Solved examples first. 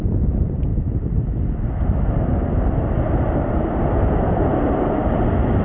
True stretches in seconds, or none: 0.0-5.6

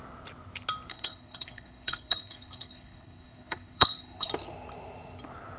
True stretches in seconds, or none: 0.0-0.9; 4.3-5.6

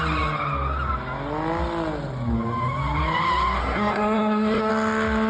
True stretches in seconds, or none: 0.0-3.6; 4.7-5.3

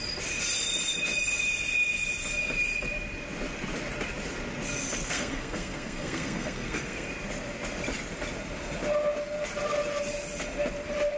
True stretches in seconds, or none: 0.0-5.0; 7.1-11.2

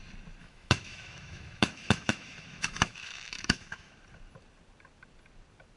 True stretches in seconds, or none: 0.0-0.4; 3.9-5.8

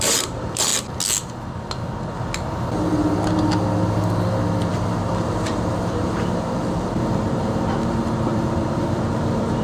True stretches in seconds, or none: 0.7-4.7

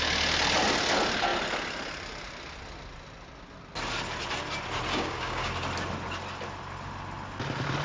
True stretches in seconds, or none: 0.0-4.9; 5.5-7.8